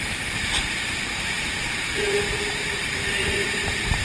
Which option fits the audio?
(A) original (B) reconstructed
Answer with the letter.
B